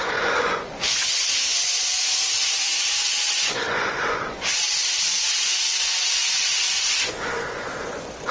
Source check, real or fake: fake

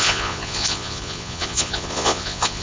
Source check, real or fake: fake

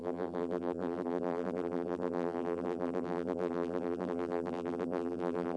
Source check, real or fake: fake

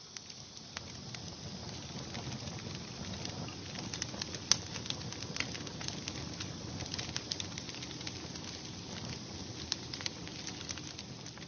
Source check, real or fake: real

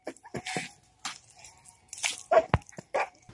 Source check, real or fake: real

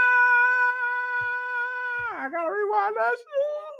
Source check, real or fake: fake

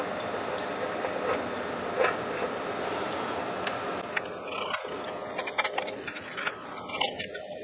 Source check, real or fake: real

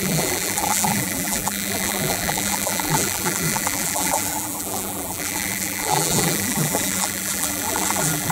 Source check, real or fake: fake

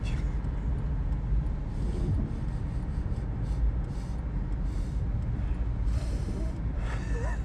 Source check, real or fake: real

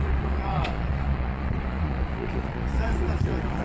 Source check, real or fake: fake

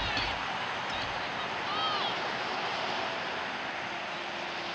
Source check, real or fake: real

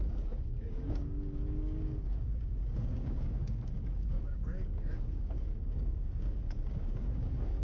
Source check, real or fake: fake